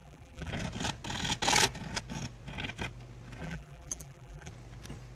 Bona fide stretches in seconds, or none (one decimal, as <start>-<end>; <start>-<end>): 0.5-3.4; 4.5-5.1